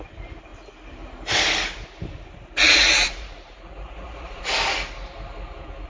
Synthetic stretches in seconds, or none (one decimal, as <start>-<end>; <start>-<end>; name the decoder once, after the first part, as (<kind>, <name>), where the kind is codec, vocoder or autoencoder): 2.6-4.4 (vocoder, Vocos)